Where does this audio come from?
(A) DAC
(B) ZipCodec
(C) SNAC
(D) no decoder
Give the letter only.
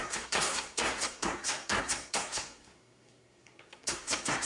C